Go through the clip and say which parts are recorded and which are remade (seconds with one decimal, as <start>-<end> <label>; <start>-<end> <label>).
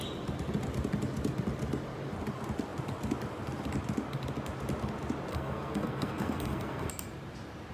0.0-5.3 recorded; 5.3-6.9 remade; 6.9-7.7 recorded